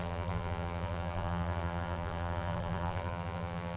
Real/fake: fake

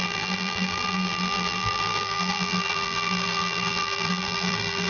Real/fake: fake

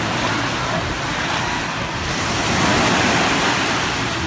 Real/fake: real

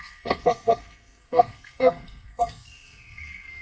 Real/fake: fake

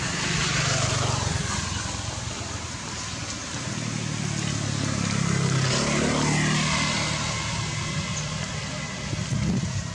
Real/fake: real